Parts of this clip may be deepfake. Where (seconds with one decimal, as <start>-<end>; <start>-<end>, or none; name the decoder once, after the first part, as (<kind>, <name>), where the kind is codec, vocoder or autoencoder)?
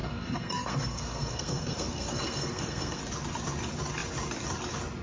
0.0-3.0 (codec, SNAC)